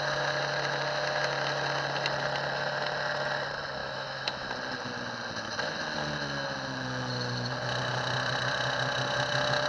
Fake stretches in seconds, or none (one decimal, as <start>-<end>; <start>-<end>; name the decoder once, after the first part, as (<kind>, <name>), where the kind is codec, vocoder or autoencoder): 3.8-4.5 (autoencoder, DAC-VAE)